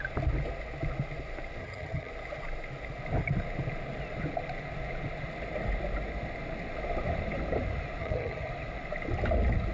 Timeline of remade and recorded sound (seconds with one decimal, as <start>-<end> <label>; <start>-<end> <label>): 0.0-1.6 recorded; 1.6-2.1 remade; 2.1-8.0 recorded; 8.0-8.5 remade; 8.5-9.7 recorded